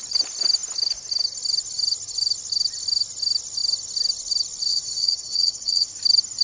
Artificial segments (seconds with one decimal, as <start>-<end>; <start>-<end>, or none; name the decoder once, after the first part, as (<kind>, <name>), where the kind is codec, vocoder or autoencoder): 4.7-5.9 (vocoder, WaveNeXt)